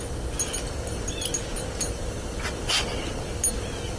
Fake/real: real